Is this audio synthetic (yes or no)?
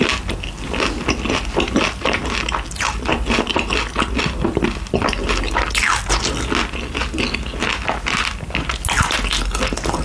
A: no